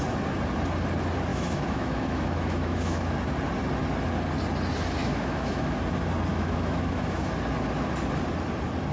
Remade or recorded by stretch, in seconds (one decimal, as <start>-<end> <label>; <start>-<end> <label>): 0.0-1.3 recorded; 1.3-3.1 remade; 3.1-5.0 recorded; 5.0-5.7 remade; 5.7-6.3 recorded; 6.3-7.3 remade; 7.3-8.9 recorded